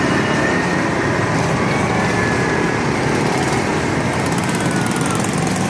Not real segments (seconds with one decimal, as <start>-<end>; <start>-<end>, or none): 0.0-5.7